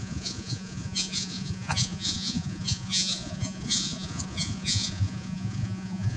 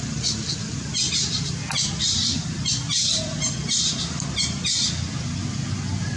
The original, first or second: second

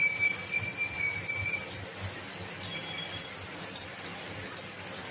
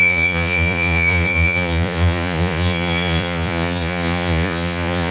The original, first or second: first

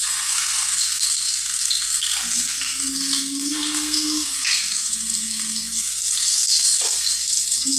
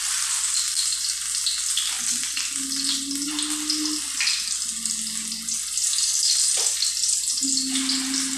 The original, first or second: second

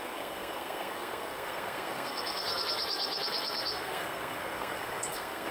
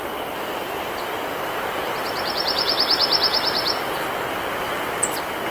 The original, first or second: second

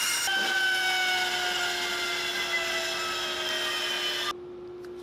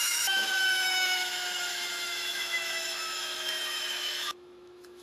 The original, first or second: first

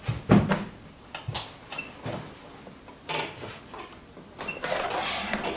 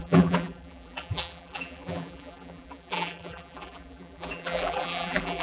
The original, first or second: first